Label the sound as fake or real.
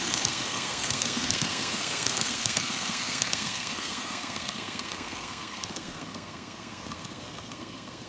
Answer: fake